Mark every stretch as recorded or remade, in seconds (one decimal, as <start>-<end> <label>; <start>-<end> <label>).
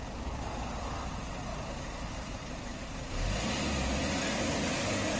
0.0-1.5 recorded; 1.5-3.1 remade; 3.1-5.2 recorded